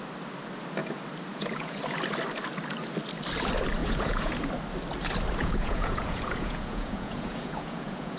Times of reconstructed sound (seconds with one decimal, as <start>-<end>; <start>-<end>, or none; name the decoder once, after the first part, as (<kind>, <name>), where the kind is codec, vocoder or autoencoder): 1.3-1.8 (vocoder, Vocos); 3.8-4.3; 5.4-8.2